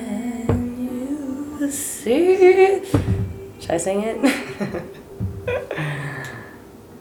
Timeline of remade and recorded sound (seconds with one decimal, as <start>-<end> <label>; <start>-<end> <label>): 0.0-1.9 recorded; 1.9-2.4 remade; 2.4-4.2 recorded; 4.2-5.2 remade; 5.2-7.0 recorded